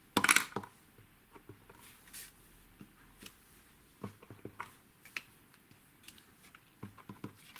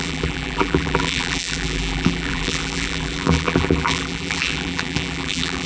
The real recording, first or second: first